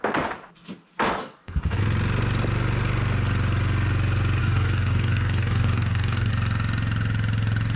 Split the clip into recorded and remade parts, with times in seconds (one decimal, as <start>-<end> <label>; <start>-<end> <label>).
0.0-1.2 recorded; 1.2-1.8 remade; 1.8-4.4 recorded; 4.4-6.3 remade; 6.3-7.8 recorded